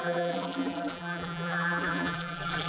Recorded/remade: remade